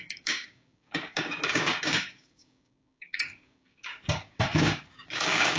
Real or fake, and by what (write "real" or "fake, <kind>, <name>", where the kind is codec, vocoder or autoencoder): fake, codec, DAC